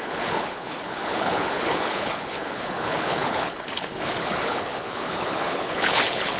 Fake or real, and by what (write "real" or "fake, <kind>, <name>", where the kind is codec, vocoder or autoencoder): fake, codec, HILCodec